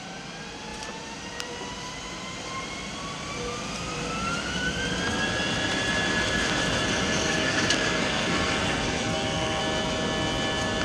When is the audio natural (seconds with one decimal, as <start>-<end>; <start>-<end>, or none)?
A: 0.0-7.2; 9.6-10.8